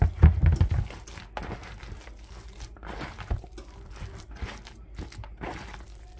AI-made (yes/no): no